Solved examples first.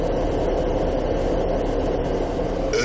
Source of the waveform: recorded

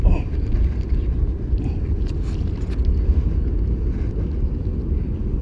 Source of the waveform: recorded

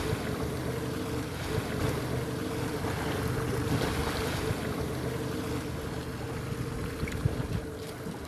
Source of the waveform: recorded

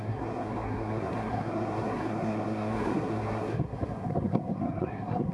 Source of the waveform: remade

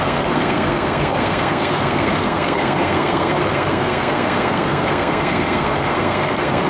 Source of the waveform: remade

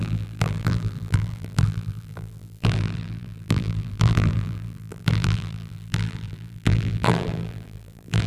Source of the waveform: remade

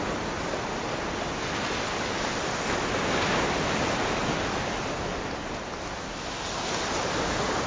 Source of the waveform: recorded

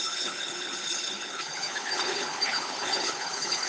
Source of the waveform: remade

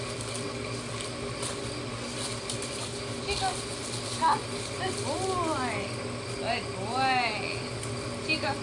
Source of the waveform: recorded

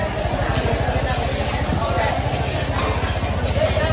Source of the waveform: recorded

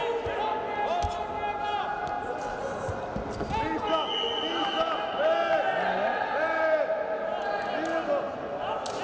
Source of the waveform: recorded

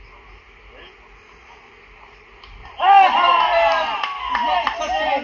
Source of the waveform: recorded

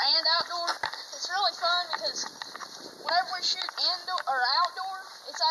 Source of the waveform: recorded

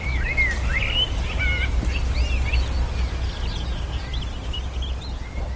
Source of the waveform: recorded